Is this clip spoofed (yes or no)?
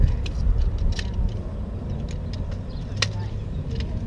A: no